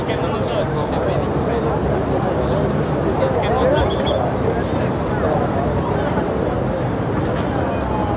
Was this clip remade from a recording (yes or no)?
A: no